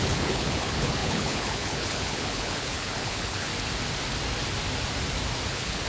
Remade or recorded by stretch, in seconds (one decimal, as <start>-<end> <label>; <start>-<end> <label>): 0.0-3.5 remade; 3.5-5.5 recorded; 5.5-5.9 remade